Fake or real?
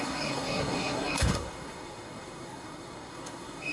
fake